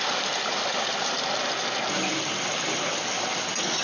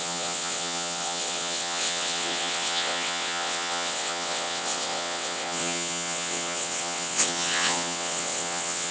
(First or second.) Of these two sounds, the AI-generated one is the second